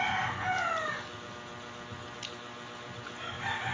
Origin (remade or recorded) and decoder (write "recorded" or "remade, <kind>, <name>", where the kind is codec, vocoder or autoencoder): recorded